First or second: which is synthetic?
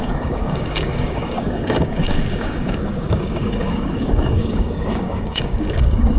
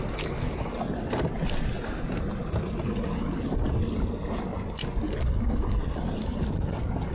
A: first